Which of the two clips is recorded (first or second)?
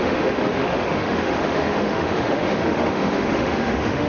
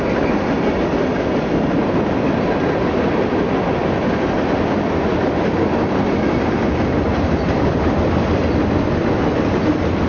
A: second